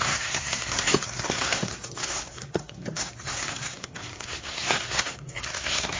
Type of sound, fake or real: fake